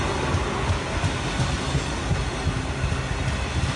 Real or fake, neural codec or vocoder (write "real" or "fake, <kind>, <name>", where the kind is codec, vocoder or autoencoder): real